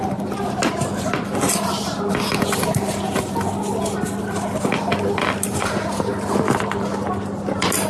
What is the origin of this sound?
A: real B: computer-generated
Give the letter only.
A